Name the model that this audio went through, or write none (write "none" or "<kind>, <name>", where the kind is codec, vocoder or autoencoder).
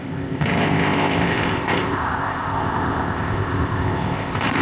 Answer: codec, ZipCodec